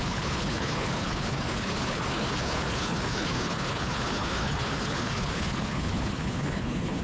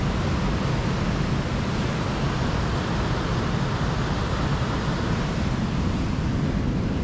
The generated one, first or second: first